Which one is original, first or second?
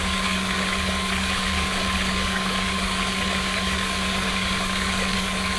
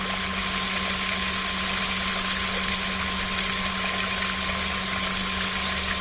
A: second